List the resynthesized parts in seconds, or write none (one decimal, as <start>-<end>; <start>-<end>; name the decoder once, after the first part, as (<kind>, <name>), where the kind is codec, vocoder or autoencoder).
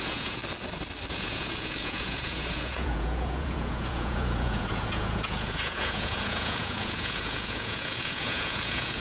0.0-0.4 (vocoder, Vocos); 1.1-9.0